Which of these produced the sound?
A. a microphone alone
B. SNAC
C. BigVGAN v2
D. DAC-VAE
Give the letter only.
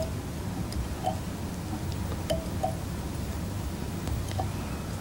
A